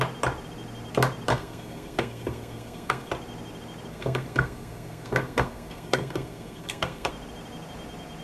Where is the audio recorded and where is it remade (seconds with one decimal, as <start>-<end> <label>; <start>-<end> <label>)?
0.0-1.3 recorded; 1.3-3.1 remade; 3.1-3.9 recorded; 3.9-7.1 remade; 7.1-8.2 recorded